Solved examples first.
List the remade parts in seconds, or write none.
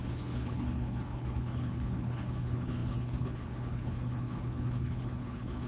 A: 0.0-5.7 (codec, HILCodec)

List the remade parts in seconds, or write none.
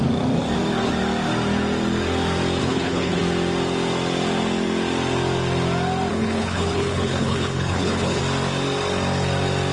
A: 2.6-3.2 (codec, HILCodec); 6.1-8.2